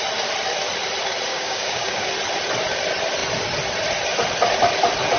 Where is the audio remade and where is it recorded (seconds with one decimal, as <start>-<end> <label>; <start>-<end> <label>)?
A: 0.0-1.3 recorded; 1.3-2.1 remade; 2.1-5.2 recorded